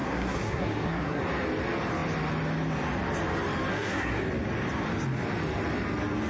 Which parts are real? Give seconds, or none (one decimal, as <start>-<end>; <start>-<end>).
1.2-3.7; 4.2-6.3